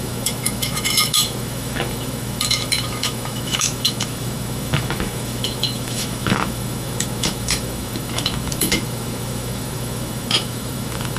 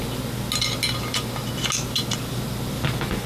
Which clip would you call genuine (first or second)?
second